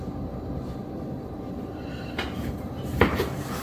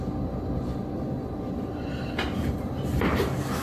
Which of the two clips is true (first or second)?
second